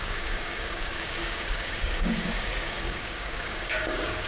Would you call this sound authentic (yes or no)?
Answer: no